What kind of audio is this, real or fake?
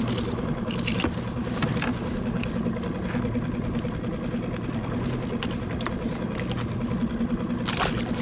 real